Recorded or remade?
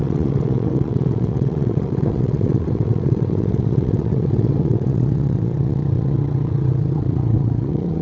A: remade